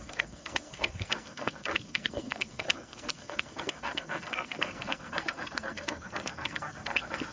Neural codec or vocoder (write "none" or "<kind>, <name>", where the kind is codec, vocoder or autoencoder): codec, SNAC